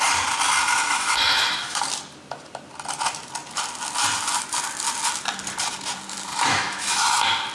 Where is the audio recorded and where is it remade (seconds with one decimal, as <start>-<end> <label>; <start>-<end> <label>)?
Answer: 0.0-0.8 recorded; 0.8-1.8 remade; 1.8-6.3 recorded; 6.3-7.0 remade; 7.0-7.5 recorded